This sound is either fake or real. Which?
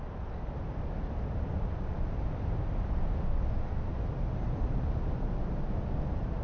real